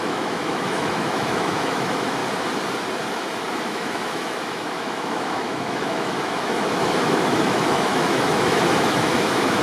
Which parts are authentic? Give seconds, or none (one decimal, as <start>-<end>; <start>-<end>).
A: 2.2-3.1